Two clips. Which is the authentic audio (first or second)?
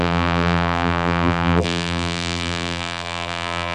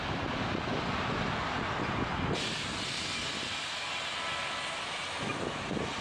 second